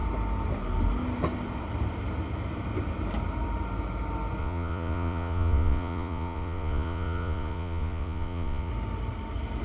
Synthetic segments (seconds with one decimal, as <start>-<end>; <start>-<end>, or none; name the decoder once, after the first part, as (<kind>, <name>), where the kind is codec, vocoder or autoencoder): 4.4-8.7 (vocoder, Vocos)